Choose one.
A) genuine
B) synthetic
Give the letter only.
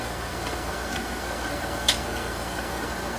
B